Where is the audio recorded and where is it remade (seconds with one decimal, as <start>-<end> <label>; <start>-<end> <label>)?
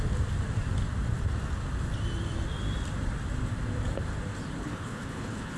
0.0-4.6 recorded; 4.6-5.6 remade